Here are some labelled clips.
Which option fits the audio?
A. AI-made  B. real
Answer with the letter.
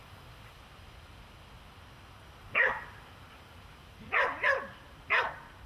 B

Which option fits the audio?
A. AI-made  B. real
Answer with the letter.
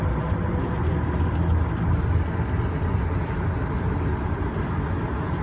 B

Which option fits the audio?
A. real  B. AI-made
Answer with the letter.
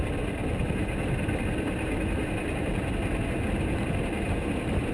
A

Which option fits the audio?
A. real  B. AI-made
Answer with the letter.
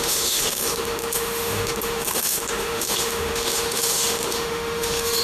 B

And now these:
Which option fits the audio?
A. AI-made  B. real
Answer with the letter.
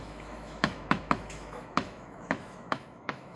A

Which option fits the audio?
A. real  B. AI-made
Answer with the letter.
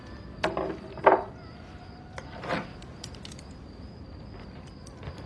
A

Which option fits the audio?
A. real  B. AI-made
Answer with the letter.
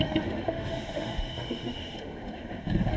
B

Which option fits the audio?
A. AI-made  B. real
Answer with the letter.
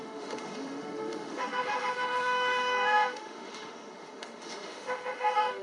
A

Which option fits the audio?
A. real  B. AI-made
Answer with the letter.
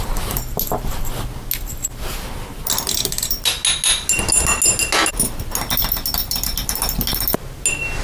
A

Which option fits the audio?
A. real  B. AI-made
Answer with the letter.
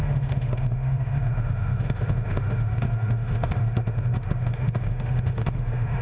B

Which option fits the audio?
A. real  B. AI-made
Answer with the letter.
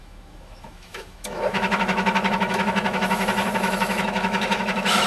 B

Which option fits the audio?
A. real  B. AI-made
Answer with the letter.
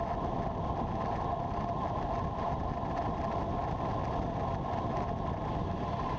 A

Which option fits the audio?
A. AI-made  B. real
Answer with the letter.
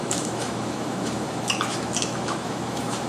A